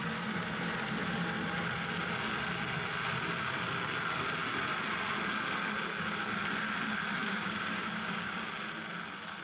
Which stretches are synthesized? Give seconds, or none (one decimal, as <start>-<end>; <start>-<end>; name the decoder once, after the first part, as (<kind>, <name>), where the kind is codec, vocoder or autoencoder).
5.9-6.4 (codec, DAC); 7.2-8.5